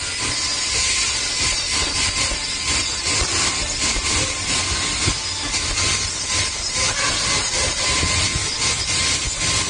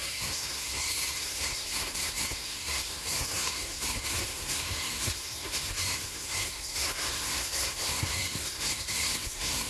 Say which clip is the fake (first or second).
second